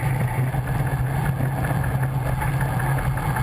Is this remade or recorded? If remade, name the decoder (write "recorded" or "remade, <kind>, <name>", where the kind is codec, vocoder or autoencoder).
recorded